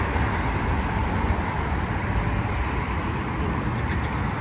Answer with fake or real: fake